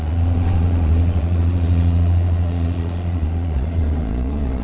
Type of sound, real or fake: fake